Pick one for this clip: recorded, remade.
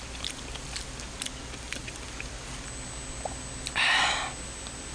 recorded